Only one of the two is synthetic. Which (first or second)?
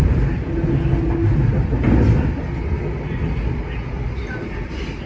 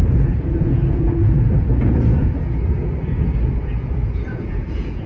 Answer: second